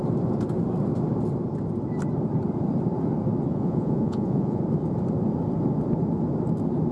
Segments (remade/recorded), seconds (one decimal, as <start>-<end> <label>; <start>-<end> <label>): 0.0-3.5 recorded; 3.5-4.6 remade; 4.6-6.9 recorded